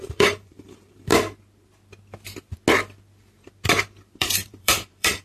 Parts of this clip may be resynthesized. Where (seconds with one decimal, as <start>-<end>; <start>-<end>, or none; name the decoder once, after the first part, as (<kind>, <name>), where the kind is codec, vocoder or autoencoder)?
0.0-1.1 (vocoder, BigVGAN v2); 4.2-5.2